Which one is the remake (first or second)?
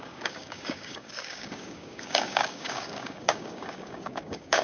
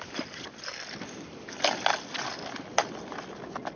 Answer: first